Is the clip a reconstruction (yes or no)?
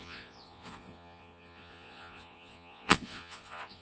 yes